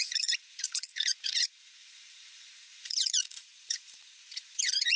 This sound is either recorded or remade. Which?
remade